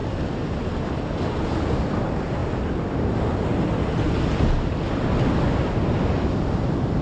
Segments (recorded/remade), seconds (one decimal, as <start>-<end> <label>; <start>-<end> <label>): 0.0-7.0 recorded